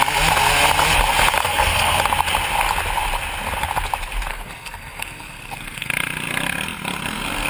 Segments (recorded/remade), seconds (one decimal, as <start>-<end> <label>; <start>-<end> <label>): 0.0-1.4 recorded; 1.4-2.0 remade; 2.0-4.3 recorded; 4.3-5.9 remade; 5.9-7.5 recorded